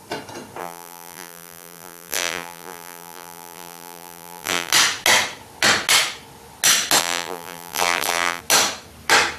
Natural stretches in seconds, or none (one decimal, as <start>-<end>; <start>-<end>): 0.0-0.6; 4.7-7.0; 8.4-9.4